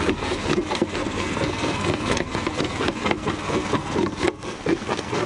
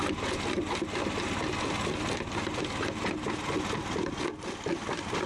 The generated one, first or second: first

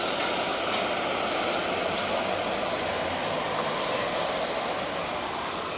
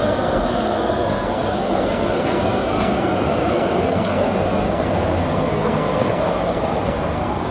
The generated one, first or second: second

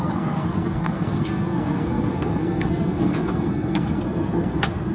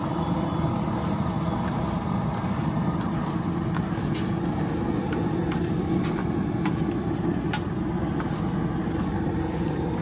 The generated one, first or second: first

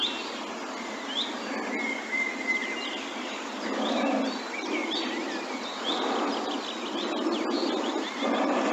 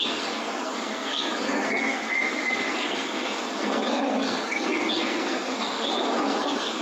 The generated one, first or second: second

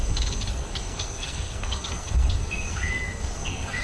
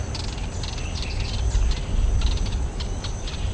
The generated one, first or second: first